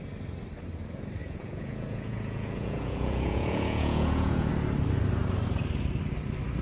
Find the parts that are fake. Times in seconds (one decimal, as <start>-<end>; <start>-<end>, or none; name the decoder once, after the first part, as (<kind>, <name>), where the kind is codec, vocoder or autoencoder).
1.2-4.5 (vocoder, Vocos)